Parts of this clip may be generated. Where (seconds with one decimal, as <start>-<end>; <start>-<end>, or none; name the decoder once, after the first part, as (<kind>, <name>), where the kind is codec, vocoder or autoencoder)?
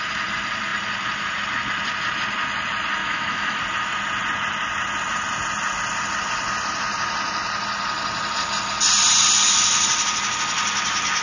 3.0-3.6 (autoencoder, DAC-VAE)